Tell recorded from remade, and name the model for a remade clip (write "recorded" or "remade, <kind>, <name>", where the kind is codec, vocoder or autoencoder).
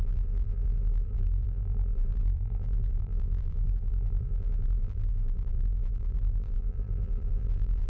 remade, vocoder, BigVGAN v2